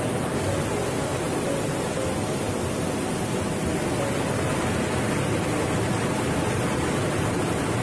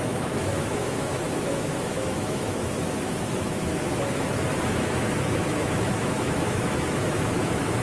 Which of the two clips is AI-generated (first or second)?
second